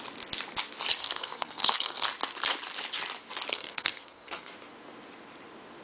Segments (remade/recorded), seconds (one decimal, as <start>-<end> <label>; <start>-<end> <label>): 0.0-1.0 recorded; 1.0-2.1 remade; 2.1-3.5 recorded; 3.5-4.5 remade; 4.5-5.8 recorded